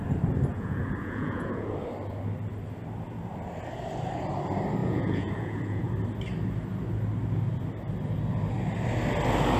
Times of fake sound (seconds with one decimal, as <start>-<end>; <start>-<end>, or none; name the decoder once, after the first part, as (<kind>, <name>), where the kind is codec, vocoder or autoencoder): 0.5-1.7 (vocoder, Vocos); 4.8-5.9